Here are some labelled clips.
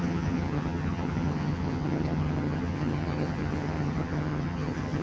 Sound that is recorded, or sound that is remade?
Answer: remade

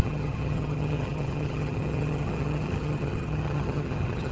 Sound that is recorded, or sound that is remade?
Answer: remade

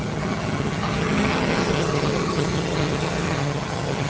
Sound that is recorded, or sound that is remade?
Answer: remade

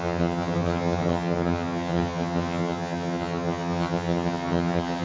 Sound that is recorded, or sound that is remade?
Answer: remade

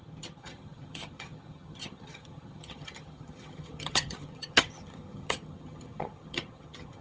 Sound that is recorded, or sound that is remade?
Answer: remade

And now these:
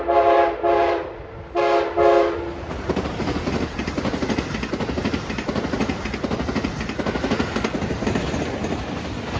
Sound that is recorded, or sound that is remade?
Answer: recorded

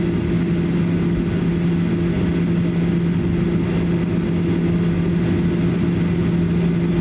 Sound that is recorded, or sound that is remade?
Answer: recorded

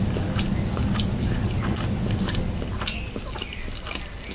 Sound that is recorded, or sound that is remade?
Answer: recorded